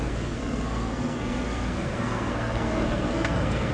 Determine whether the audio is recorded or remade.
remade